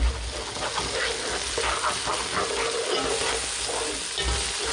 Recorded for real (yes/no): yes